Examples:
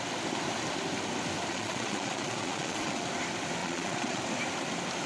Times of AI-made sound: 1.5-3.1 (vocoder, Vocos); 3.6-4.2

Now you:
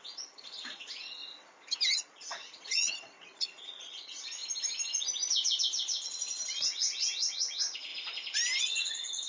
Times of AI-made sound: 0.0-1.2 (vocoder, Vocos); 1.9-4.4; 5.6-7.9; 8.6-9.3

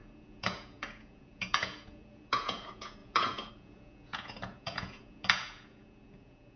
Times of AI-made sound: 0.0-6.6 (vocoder, Vocos)

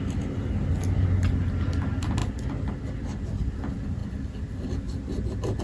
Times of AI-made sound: none

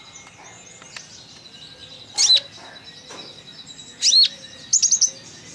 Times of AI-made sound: none

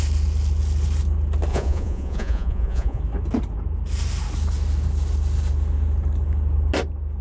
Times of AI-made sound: 1.5-3.0 (vocoder, Vocos)

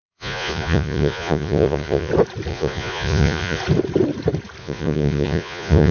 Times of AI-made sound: 0.0-2.1 (vocoder, Vocos); 2.5-3.6; 4.6-5.9